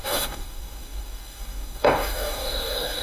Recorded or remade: remade